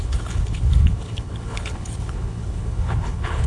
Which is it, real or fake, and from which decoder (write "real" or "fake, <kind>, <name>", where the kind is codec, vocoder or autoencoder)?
fake, codec, HILCodec